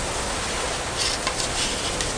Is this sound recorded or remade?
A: recorded